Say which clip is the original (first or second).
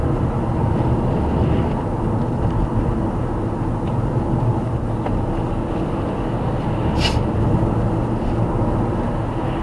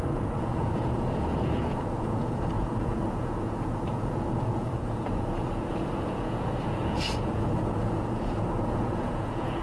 first